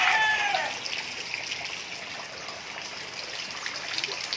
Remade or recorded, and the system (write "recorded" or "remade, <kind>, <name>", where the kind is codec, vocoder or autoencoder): recorded